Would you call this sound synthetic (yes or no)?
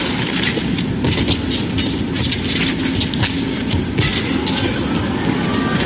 no